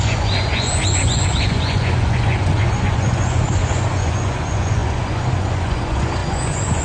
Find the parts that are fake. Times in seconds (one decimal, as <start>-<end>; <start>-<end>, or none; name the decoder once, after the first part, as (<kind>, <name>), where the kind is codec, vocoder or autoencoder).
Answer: 0.0-6.8 (vocoder, Vocos)

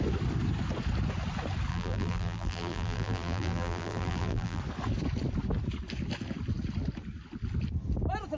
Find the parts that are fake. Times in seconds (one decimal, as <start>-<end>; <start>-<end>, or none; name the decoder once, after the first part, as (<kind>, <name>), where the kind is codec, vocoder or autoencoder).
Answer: 1.7-4.6 (vocoder, BigVGAN v2)

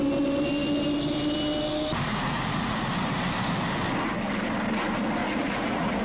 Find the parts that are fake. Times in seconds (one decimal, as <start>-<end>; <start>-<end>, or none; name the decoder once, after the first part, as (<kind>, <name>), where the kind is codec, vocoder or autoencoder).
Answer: 2.1-2.9 (vocoder, Vocos); 5.2-6.0

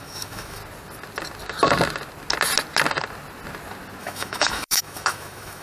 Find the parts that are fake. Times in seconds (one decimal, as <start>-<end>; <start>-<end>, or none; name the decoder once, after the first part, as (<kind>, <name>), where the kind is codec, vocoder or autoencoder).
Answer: 0.0-0.6 (autoencoder, DAC-VAE); 4.0-5.6